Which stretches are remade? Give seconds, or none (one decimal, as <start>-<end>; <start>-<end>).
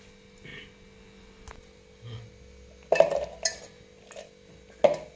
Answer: none